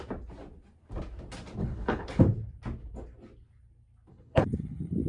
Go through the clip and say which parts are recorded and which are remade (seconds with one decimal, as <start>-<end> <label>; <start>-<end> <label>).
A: 0.0-1.6 recorded; 1.6-2.2 remade; 2.2-4.1 recorded; 4.1-5.1 remade